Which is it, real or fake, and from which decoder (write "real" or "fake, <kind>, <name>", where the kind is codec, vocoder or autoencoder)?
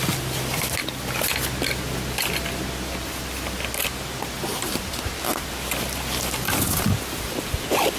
real